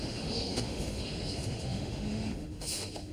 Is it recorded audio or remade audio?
remade